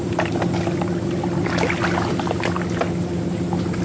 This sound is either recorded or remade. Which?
recorded